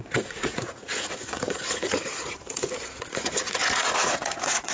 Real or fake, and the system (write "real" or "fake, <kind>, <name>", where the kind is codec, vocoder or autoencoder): fake, vocoder, Vocos